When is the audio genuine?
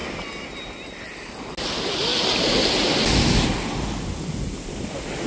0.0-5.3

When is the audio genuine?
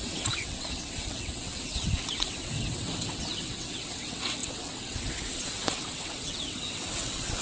none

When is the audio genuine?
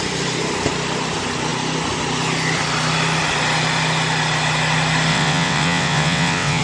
0.0-5.1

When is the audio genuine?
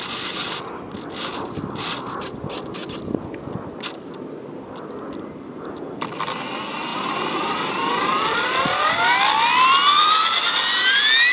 0.0-11.3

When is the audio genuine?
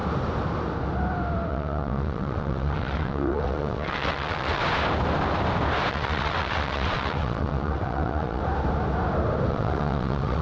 0.0-1.5; 4.6-5.9; 8.4-9.5